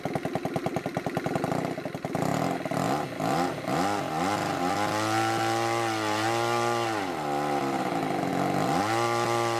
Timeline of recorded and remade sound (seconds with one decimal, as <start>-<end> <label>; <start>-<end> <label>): 0.0-9.6 recorded